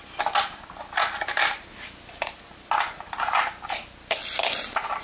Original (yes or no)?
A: yes